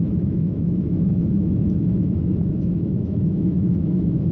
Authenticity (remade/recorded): remade